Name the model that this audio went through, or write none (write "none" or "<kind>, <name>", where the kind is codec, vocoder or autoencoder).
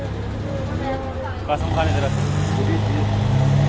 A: none